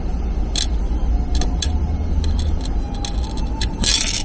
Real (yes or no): yes